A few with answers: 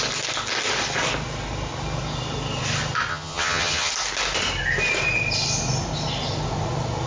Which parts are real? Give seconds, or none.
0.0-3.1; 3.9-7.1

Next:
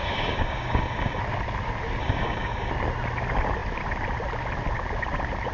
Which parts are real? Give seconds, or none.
1.2-2.0; 2.7-5.5

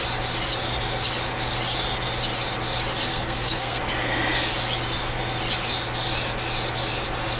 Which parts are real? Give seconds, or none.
0.0-3.1; 3.8-7.4

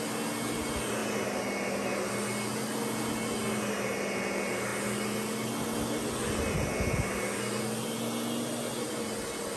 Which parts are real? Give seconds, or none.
0.0-9.6

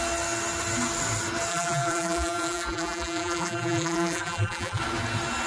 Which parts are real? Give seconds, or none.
0.0-1.5; 4.8-5.5